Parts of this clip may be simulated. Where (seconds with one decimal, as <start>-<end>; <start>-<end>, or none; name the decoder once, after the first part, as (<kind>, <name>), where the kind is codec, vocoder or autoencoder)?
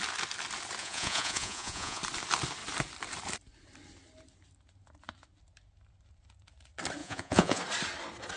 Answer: 0.8-2.0 (vocoder, Vocos); 7.0-7.6